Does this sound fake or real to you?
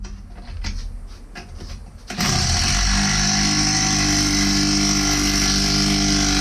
real